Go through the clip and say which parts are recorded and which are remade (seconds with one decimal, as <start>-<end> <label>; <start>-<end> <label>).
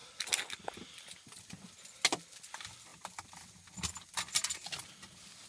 0.0-5.5 recorded